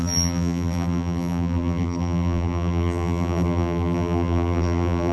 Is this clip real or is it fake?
fake